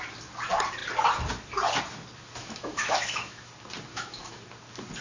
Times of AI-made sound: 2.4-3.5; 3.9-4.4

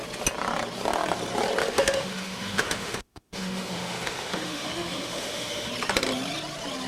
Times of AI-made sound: 1.6-5.7

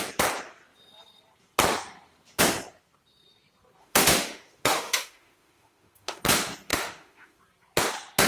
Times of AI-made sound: 3.8-6.2; 6.7-7.4

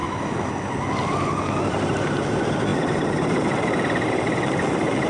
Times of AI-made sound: 0.0-0.5